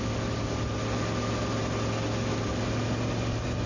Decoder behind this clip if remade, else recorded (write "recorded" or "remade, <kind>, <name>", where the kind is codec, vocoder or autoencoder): recorded